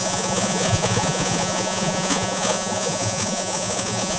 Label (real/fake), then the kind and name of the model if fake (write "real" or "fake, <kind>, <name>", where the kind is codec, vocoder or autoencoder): fake, vocoder, Vocos